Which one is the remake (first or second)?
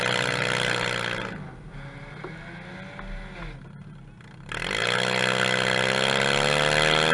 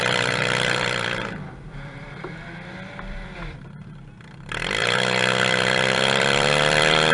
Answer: second